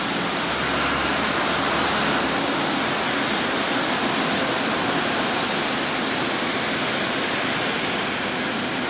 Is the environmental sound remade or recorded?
recorded